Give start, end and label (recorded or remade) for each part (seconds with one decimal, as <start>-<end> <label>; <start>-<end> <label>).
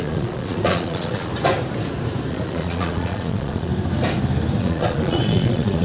0.0-1.3 remade; 1.3-2.3 recorded; 2.3-3.7 remade; 3.7-4.6 recorded; 4.6-5.8 remade